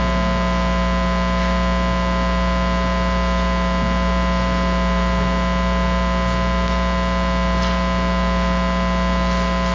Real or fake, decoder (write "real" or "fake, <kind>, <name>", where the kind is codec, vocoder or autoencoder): real